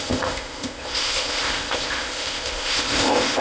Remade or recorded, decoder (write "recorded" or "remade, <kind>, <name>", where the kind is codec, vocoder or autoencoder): remade, codec, ZipCodec